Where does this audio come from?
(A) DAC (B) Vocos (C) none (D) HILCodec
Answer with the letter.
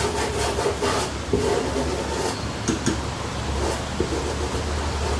C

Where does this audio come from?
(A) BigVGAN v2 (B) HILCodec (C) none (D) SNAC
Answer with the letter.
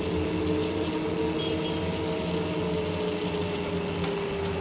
C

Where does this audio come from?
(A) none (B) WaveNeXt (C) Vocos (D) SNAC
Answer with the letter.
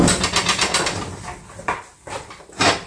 A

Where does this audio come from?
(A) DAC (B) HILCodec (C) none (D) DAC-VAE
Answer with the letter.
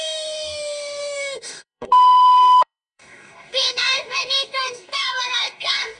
A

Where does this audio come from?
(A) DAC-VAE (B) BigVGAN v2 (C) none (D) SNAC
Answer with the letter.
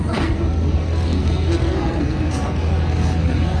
D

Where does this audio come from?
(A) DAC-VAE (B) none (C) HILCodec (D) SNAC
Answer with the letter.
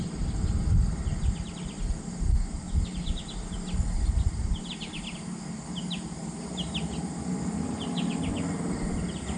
B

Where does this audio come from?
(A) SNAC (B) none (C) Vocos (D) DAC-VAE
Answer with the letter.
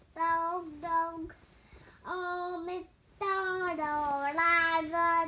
B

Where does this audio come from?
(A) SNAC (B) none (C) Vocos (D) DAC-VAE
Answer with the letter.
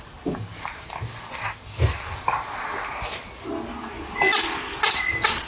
B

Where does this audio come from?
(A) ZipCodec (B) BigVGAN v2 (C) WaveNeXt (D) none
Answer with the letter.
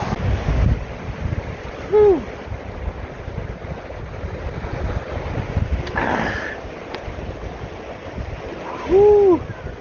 D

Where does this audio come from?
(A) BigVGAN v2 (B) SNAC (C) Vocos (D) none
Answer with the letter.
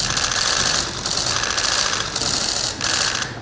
D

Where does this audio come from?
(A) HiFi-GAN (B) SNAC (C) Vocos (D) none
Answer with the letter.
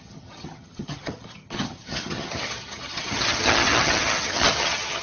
A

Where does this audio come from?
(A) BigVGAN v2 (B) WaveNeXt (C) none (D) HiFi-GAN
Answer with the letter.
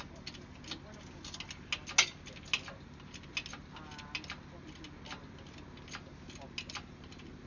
C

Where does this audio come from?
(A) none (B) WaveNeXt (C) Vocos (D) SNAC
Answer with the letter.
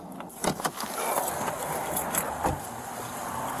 A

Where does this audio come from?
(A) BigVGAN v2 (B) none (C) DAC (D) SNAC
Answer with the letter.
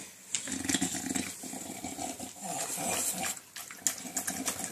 B